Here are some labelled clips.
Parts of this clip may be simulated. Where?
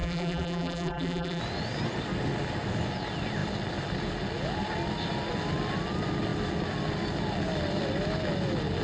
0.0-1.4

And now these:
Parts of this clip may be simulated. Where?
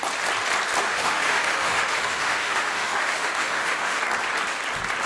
0.9-4.0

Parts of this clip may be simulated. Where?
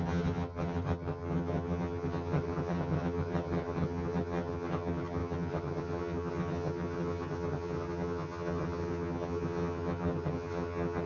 0.0-11.1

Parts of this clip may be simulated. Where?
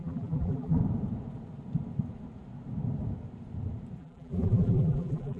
0.0-0.8; 4.0-5.4